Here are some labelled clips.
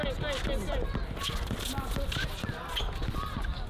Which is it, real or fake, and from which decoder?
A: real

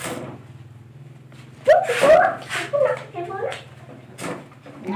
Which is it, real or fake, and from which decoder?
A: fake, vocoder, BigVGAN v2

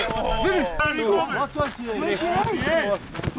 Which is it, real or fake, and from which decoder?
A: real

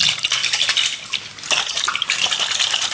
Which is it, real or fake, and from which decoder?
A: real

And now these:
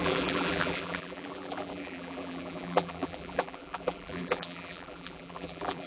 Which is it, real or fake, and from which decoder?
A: fake, vocoder, BigVGAN v2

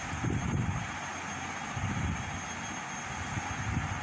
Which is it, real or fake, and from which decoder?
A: real